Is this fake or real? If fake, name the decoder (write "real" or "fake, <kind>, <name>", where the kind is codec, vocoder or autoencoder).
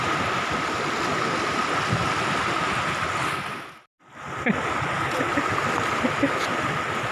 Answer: real